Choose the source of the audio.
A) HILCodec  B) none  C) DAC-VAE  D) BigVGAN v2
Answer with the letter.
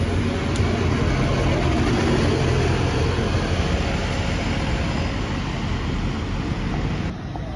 B